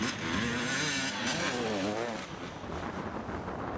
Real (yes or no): yes